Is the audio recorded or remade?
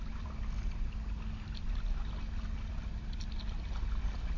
recorded